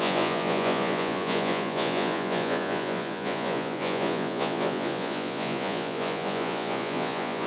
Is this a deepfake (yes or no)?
yes